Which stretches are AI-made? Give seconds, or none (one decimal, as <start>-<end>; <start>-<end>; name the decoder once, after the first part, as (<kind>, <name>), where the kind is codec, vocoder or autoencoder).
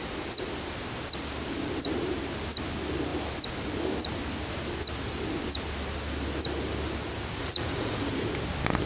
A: 7.4-8.1 (vocoder, Vocos)